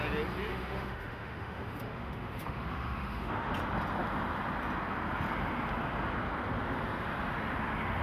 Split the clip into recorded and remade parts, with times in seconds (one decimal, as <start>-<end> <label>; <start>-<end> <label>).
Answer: 0.0-0.5 recorded; 0.5-3.5 remade; 3.5-8.0 recorded